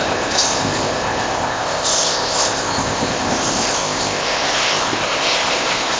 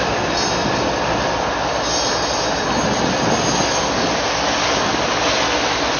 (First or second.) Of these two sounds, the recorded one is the second